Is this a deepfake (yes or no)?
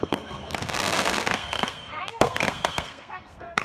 yes